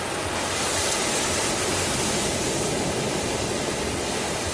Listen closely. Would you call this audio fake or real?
real